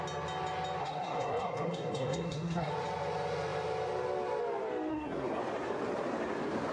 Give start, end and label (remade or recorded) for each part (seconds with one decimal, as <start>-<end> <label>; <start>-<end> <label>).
0.0-0.8 recorded; 0.8-2.7 remade; 2.7-4.9 recorded; 4.9-5.4 remade; 5.4-6.7 recorded